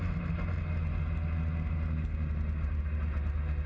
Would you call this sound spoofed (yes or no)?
no